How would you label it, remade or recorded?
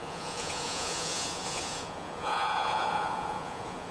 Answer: remade